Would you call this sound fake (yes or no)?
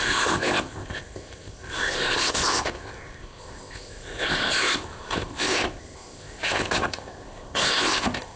yes